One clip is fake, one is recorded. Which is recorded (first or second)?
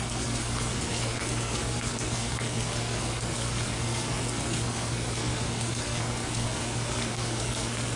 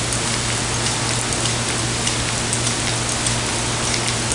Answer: second